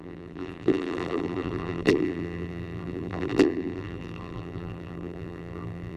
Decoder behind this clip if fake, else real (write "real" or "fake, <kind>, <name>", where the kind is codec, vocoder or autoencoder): fake, vocoder, BigVGAN v2